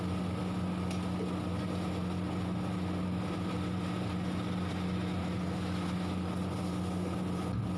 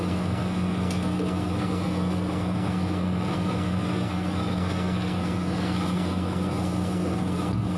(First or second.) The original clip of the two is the first